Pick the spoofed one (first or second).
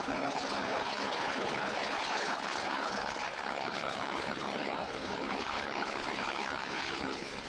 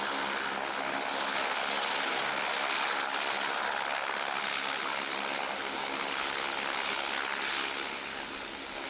first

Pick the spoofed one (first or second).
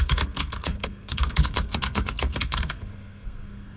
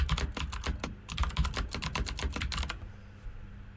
first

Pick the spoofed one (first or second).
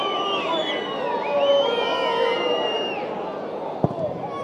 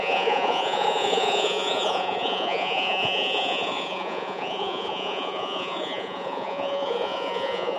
second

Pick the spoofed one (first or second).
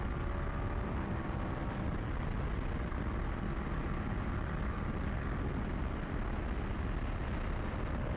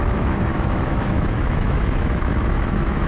second